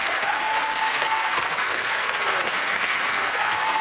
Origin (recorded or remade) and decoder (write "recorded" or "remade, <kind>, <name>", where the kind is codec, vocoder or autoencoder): remade, codec, SNAC